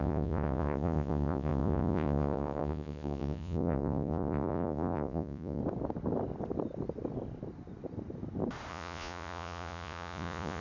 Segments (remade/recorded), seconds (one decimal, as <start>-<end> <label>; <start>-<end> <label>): 0.0-5.6 remade; 5.6-8.7 recorded; 8.7-10.6 remade